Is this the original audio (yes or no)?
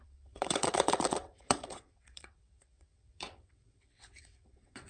no